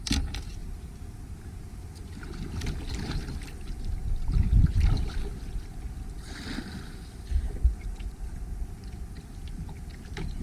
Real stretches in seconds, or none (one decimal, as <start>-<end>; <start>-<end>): 0.0-10.4

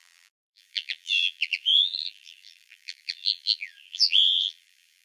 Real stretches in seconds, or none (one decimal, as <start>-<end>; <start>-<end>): none

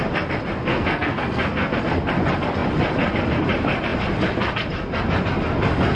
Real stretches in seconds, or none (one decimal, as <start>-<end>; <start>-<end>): 0.0-0.7; 1.8-6.0

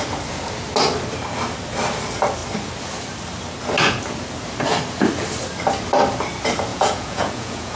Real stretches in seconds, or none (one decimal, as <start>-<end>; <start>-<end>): 0.0-6.7

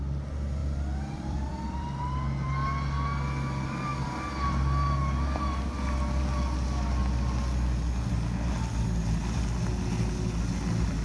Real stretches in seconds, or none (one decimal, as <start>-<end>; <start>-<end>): 0.0-0.6; 2.0-11.0

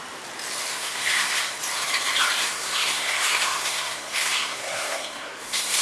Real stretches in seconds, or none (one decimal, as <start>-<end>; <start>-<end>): 0.0-0.7; 1.6-2.4

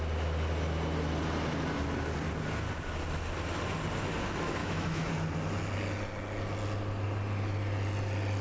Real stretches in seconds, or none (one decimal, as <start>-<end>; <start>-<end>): 0.0-4.6; 5.1-8.4